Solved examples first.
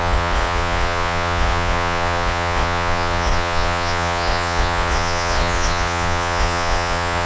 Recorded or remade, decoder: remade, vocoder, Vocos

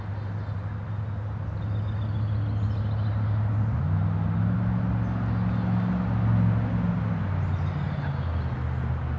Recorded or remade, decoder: recorded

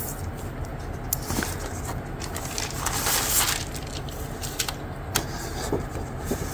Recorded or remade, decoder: recorded